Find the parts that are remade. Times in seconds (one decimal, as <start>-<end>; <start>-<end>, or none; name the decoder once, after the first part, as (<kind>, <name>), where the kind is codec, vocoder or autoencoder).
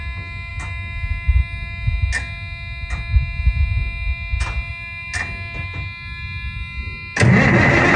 none